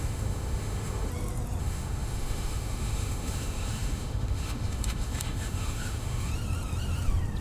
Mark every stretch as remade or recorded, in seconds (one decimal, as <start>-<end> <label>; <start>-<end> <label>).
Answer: 0.0-1.1 remade; 1.1-1.6 recorded; 1.6-6.3 remade; 6.3-7.4 recorded